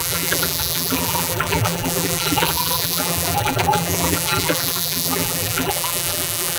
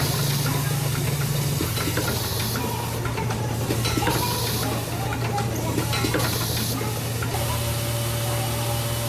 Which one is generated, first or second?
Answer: first